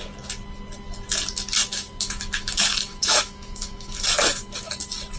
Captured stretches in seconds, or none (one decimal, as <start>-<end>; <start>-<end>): 0.0-1.6; 4.7-5.2